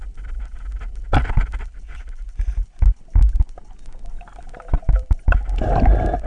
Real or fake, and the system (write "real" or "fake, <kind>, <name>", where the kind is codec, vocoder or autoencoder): real